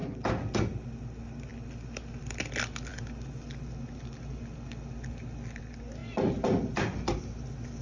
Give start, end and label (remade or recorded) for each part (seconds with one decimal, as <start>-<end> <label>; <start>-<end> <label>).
0.0-7.8 recorded